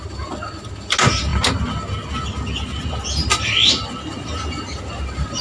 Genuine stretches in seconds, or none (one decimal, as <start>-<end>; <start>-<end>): 0.0-5.4